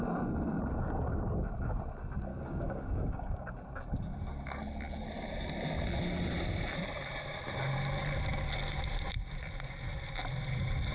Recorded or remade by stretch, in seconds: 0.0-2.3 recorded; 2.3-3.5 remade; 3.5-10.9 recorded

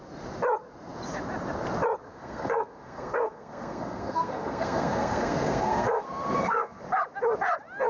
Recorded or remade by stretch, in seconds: 0.0-2.1 recorded; 2.1-6.8 remade; 6.8-7.9 recorded

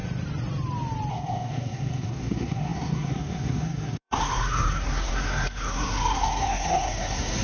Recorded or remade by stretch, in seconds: 0.0-1.1 recorded; 1.1-7.4 remade